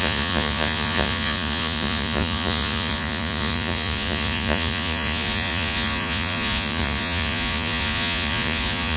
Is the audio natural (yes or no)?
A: no